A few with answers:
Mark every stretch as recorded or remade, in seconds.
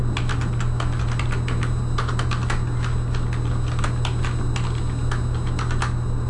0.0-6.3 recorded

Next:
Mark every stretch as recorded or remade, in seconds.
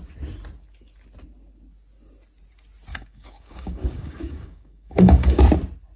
0.0-2.9 recorded; 2.9-5.4 remade; 5.4-6.0 recorded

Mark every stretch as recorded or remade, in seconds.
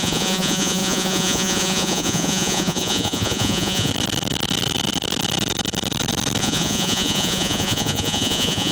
0.0-3.9 remade; 3.9-6.4 recorded; 6.4-8.7 remade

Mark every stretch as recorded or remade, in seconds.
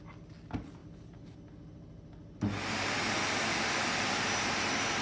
0.0-5.0 recorded